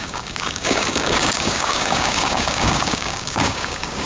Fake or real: fake